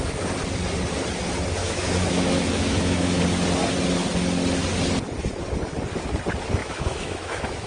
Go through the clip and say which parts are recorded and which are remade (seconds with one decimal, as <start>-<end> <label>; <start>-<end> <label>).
0.0-1.6 recorded; 1.6-3.2 remade; 3.2-6.6 recorded; 6.6-7.7 remade